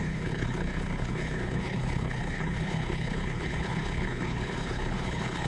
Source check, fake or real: fake